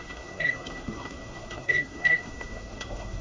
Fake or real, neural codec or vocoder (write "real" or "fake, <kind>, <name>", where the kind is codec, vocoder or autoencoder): fake, codec, SNAC